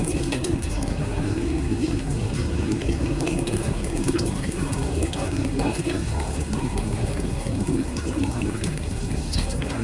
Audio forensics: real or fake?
fake